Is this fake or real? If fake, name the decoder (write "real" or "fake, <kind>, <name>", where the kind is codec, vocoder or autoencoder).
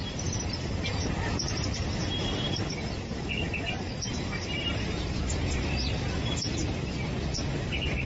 real